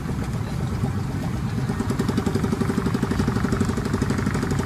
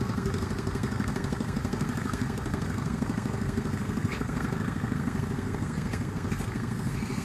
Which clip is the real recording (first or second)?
first